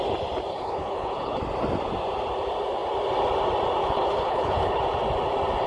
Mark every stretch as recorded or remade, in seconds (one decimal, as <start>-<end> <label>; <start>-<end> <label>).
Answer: 0.0-0.5 recorded; 0.5-1.4 remade; 1.4-3.8 recorded; 3.8-4.8 remade; 4.8-5.7 recorded